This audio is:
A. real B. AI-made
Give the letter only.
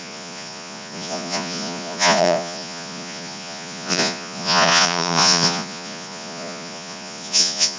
B